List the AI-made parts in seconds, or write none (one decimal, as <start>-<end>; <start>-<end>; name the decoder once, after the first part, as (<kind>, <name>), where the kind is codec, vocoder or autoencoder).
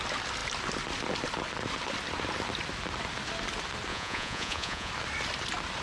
3.9-4.9 (vocoder, Vocos)